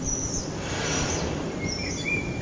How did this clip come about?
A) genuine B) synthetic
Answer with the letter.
B